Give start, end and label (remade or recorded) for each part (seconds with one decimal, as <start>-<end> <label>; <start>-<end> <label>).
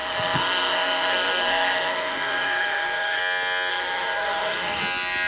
0.0-3.2 remade; 3.2-3.7 recorded; 3.7-4.8 remade; 4.8-5.3 recorded